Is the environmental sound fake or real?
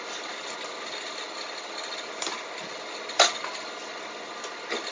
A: real